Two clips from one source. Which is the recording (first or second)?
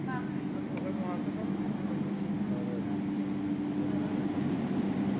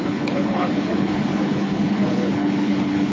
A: first